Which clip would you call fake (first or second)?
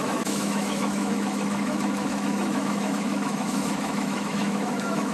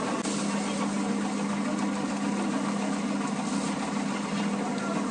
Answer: first